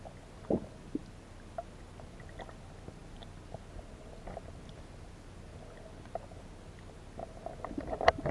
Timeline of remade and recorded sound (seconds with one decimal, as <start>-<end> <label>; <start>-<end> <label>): 0.0-8.3 recorded